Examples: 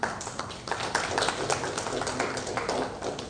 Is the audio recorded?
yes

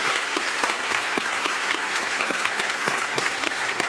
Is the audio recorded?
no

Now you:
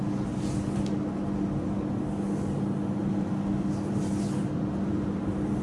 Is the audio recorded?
yes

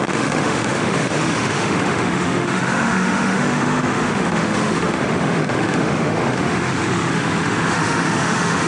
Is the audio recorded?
no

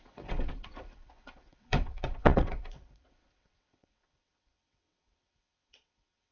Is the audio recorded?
no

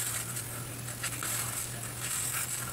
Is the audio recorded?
yes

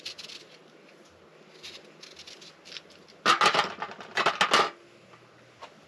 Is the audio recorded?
yes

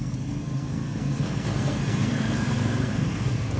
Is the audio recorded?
no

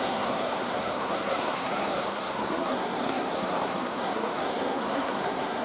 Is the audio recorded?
no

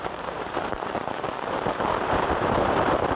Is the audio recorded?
no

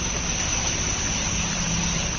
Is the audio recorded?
yes